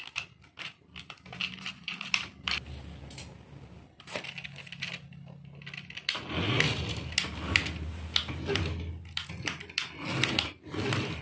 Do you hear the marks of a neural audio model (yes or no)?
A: no